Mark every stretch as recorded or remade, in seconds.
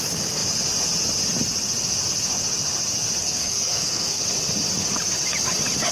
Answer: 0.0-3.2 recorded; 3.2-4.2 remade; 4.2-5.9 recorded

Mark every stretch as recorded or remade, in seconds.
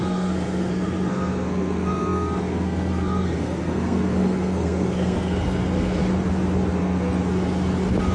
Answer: 0.0-6.0 remade; 6.0-6.8 recorded; 6.8-7.2 remade; 7.2-8.1 recorded